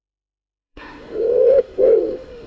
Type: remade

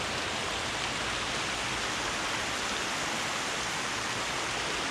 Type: recorded